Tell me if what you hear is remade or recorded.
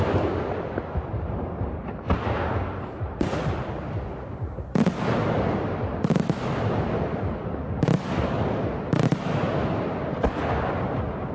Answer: recorded